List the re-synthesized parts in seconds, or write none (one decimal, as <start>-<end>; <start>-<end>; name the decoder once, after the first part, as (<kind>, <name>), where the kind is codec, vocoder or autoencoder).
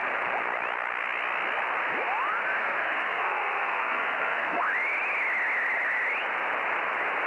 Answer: 2.6-4.6 (codec, SNAC)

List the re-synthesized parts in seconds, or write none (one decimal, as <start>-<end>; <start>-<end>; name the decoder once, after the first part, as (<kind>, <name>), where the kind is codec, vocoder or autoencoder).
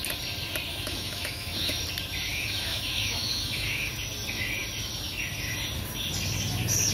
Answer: 0.7-1.8 (autoencoder, DAC-VAE); 2.3-3.9